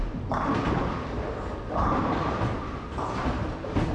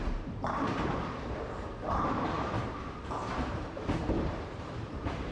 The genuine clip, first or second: first